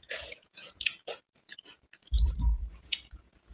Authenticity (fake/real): fake